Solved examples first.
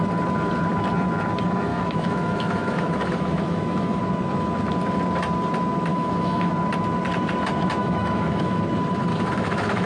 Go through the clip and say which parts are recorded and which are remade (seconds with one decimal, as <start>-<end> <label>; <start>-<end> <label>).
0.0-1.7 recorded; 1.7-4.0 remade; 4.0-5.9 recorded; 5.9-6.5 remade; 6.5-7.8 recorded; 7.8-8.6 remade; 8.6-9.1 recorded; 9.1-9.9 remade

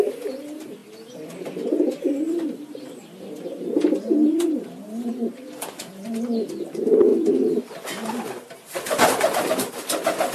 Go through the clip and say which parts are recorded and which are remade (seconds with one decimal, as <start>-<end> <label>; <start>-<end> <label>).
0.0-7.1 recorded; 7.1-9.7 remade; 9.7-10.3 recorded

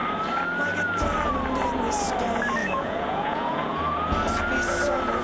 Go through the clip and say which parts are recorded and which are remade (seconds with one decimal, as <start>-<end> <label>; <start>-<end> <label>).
0.0-2.6 recorded; 2.6-3.8 remade; 3.8-5.2 recorded

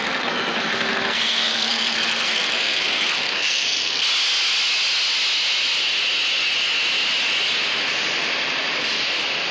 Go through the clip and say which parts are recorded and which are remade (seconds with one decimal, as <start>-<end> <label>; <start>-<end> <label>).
0.0-4.0 remade; 4.0-9.5 recorded

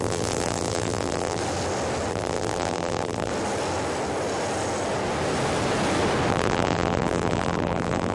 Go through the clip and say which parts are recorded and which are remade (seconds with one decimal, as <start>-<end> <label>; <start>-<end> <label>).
0.0-1.4 remade; 1.4-2.1 recorded; 2.1-3.3 remade; 3.3-6.3 recorded; 6.3-8.1 remade